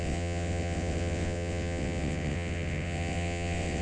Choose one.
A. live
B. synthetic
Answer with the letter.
B